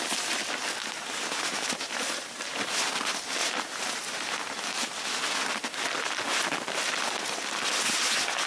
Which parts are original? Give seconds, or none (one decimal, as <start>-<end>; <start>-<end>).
0.0-0.8; 2.8-3.4; 4.6-8.5